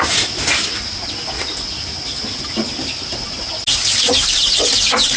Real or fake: real